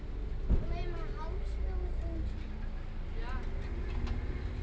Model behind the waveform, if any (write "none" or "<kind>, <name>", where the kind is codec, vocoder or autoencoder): none